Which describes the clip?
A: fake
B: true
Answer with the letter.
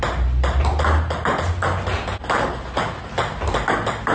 B